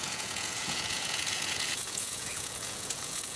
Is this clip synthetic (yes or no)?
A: yes